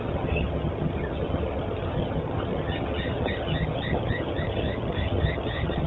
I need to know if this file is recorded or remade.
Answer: remade